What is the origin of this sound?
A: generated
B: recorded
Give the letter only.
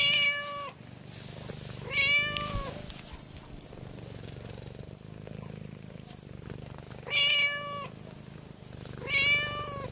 B